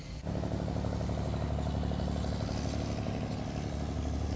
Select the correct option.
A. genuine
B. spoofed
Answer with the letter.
A